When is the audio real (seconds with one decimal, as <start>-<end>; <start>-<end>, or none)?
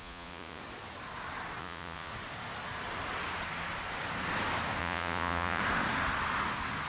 0.6-1.6; 2.1-4.8; 5.6-6.9